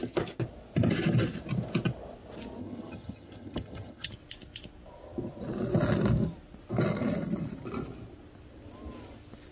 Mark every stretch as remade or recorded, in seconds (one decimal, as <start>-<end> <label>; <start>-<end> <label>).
0.0-2.6 recorded; 2.6-4.1 remade; 4.1-9.5 recorded